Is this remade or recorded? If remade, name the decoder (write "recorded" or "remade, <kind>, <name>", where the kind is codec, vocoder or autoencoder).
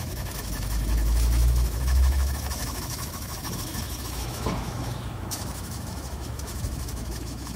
remade, autoencoder, DAC-VAE